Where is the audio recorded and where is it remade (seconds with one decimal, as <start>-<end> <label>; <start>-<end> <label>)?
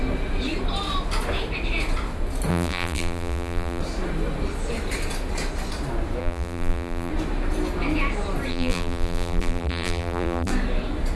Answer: 0.0-2.5 recorded; 2.5-3.8 remade; 3.8-6.2 recorded; 6.2-7.1 remade; 7.1-8.5 recorded; 8.5-10.5 remade; 10.5-11.2 recorded